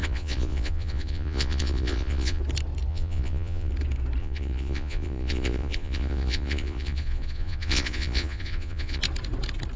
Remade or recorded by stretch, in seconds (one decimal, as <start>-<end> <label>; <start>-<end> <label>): 0.0-2.4 remade; 2.4-2.9 recorded; 2.9-3.7 remade; 3.7-4.2 recorded; 4.2-9.0 remade; 9.0-9.8 recorded